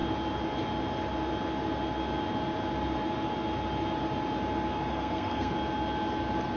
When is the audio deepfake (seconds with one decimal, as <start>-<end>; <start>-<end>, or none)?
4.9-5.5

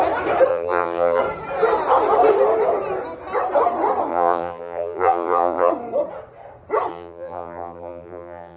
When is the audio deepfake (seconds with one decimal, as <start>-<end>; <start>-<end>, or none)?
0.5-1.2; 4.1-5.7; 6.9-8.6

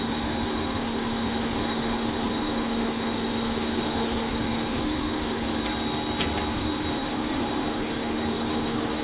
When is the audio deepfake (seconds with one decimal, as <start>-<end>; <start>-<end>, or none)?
0.0-5.6; 6.5-9.0

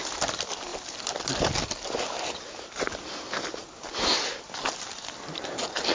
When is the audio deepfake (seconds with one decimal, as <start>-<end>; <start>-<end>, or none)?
none

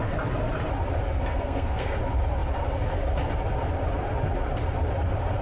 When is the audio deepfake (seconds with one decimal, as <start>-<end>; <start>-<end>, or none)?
1.3-2.0